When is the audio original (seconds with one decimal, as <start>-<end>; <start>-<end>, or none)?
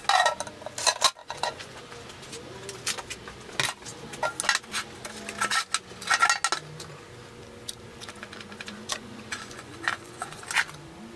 0.0-1.2; 1.8-7.9; 10.4-11.2